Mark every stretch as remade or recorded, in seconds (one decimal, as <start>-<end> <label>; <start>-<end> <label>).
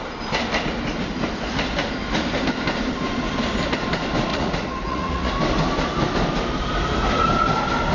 0.0-4.3 recorded; 4.3-5.3 remade; 5.3-7.9 recorded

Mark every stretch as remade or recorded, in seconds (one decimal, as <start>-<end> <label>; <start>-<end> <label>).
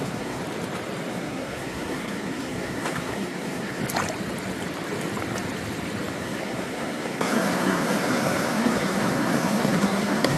0.0-0.4 remade; 0.4-1.1 recorded; 1.1-3.8 remade; 3.8-6.1 recorded; 6.1-10.4 remade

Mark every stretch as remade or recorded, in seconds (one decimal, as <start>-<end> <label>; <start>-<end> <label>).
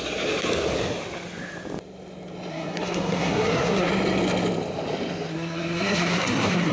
0.0-2.5 recorded; 2.5-3.9 remade; 3.9-5.3 recorded; 5.3-6.7 remade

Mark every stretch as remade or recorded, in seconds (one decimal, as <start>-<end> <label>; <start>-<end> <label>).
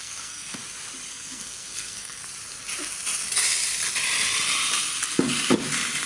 0.0-0.6 remade; 0.6-1.1 recorded; 1.1-2.2 remade; 2.2-6.1 recorded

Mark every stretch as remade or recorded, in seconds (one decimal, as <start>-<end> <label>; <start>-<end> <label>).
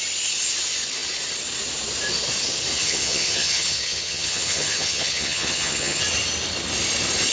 0.0-2.8 recorded; 2.8-6.0 remade; 6.0-7.3 recorded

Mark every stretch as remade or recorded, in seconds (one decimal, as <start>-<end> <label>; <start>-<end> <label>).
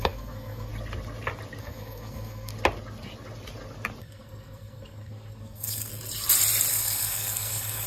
0.0-0.7 remade; 0.7-1.6 recorded; 1.6-2.5 remade; 2.5-4.0 recorded; 4.0-5.9 remade; 5.9-6.7 recorded; 6.7-7.9 remade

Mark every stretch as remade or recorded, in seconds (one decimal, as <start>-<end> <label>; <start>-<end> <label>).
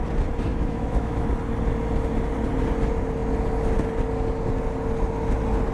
0.0-0.5 recorded; 0.5-1.3 remade; 1.3-5.7 recorded